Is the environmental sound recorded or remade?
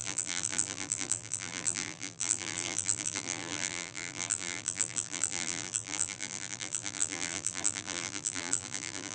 remade